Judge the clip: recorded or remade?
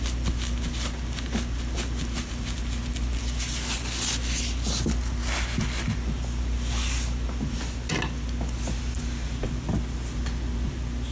recorded